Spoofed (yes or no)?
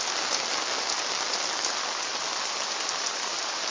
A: no